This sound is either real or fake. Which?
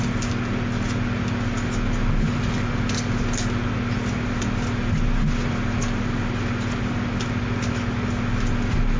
real